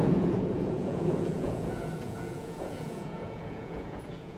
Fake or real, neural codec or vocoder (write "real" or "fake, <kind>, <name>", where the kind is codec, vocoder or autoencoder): fake, vocoder, Vocos